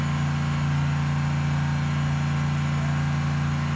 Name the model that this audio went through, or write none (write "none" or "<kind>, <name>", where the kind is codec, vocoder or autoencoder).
none